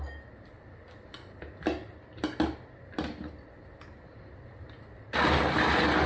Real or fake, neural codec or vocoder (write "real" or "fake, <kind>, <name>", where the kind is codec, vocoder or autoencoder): real